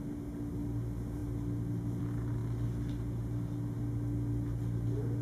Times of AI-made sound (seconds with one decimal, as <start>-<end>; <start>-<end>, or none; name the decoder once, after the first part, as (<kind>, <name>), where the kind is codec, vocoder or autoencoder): none